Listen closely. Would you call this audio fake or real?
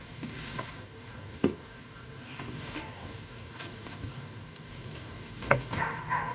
fake